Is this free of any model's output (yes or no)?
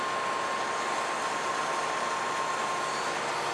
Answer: yes